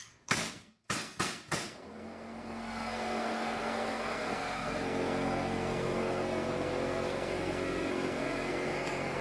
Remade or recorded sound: remade